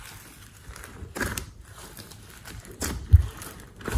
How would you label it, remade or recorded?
remade